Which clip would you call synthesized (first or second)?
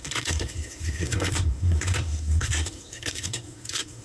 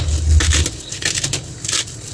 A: first